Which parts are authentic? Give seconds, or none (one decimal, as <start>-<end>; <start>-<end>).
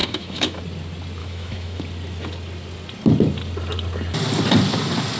0.6-1.2; 1.8-5.2